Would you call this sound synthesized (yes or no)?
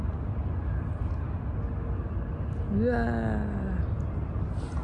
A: no